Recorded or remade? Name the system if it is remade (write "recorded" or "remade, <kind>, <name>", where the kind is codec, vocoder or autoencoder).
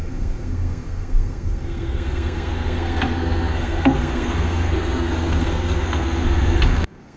remade, codec, SNAC